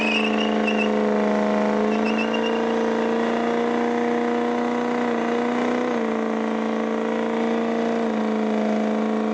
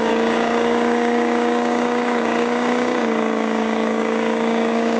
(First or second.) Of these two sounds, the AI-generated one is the second